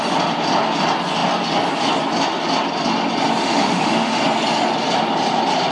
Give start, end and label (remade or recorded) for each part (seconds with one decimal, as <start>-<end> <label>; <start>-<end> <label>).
0.0-3.4 recorded; 3.4-4.2 remade; 4.2-5.7 recorded